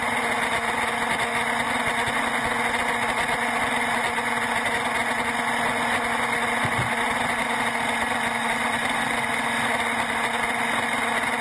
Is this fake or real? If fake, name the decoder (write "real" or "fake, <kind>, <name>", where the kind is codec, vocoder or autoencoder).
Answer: real